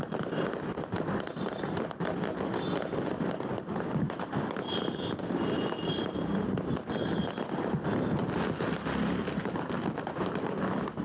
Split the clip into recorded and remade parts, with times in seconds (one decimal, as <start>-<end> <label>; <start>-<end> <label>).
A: 0.0-11.0 recorded